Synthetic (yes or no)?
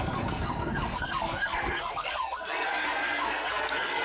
yes